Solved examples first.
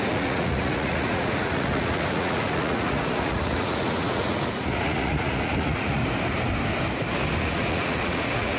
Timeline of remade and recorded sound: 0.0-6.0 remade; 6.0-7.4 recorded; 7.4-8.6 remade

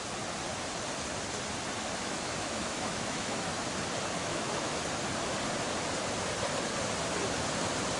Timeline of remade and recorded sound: 0.0-2.0 recorded; 2.0-3.6 remade; 3.6-4.2 recorded; 4.2-4.8 remade; 4.8-8.0 recorded

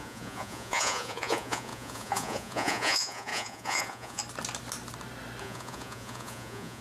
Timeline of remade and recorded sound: 0.0-4.2 remade; 4.2-5.4 recorded; 5.4-6.8 remade

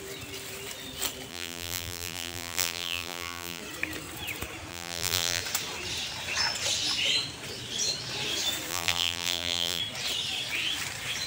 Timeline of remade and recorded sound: 0.0-1.3 recorded; 1.3-3.6 remade; 3.6-4.7 recorded; 4.7-5.4 remade; 5.4-8.7 recorded; 8.7-9.8 remade; 9.8-11.3 recorded

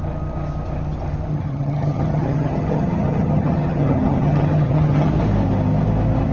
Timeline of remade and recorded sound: 0.0-1.3 recorded; 1.3-5.1 remade; 5.1-6.3 recorded

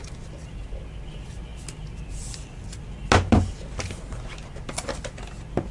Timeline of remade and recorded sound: 0.0-5.7 recorded